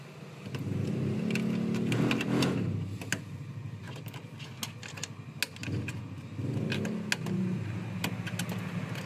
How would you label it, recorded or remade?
recorded